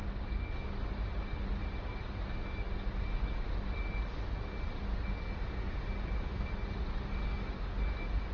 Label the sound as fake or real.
real